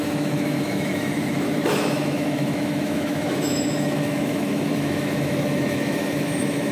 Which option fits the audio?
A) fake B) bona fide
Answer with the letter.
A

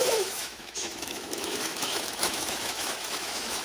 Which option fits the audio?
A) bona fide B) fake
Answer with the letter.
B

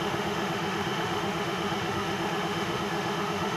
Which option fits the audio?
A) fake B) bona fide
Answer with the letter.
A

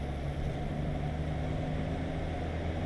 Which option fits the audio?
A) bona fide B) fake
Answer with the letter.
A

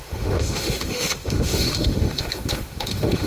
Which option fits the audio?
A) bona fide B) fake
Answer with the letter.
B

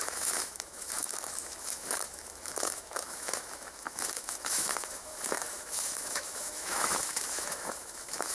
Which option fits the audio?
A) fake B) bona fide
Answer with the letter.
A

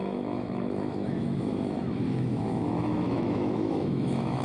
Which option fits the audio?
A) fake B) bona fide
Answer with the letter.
A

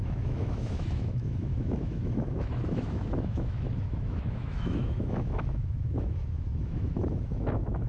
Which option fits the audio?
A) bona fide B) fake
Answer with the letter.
B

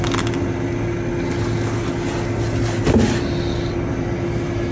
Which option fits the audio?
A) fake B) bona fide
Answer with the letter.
B